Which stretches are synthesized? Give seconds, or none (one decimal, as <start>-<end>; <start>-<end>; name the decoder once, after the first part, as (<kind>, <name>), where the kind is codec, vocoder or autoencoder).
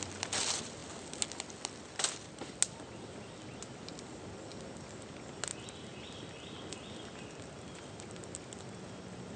none